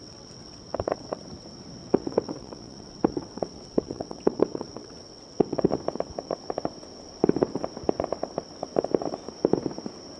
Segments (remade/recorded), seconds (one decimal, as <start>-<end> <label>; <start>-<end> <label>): 0.0-1.2 remade; 1.2-1.8 recorded; 1.8-5.7 remade; 5.7-10.2 recorded